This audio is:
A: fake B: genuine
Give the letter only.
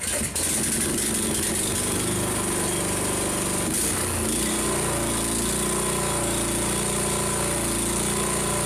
B